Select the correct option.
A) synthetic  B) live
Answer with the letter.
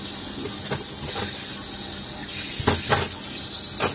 B